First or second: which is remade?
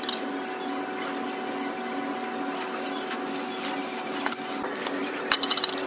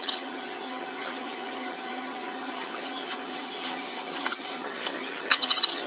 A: second